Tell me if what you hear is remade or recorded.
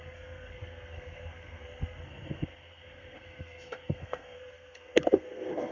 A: remade